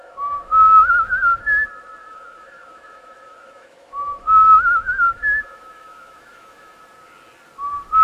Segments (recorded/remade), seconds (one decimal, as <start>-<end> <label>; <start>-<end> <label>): 0.0-0.9 remade; 0.9-2.0 recorded; 2.0-6.8 remade; 6.8-8.0 recorded